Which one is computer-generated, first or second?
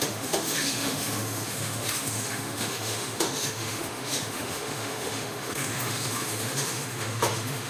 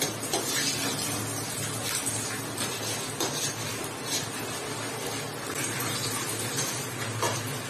first